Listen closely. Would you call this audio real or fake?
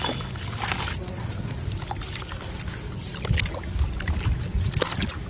real